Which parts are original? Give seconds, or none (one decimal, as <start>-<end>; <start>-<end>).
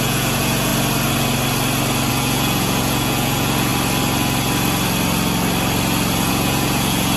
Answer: 0.7-2.1; 3.7-6.3